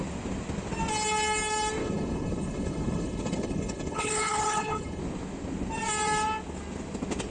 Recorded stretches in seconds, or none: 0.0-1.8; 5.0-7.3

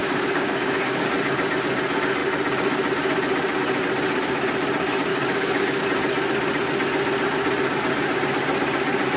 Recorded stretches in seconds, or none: 1.1-5.1; 5.8-9.2

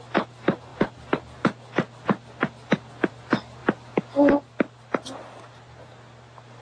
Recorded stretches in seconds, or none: 0.0-6.6

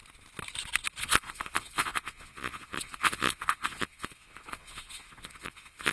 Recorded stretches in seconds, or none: 0.0-1.0

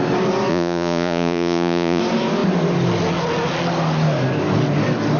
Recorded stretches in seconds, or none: 0.0-0.5; 2.0-5.2